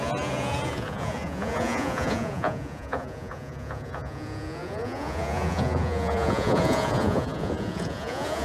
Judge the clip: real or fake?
fake